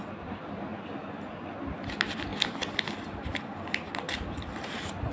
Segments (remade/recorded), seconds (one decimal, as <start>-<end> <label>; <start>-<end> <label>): 0.0-5.1 recorded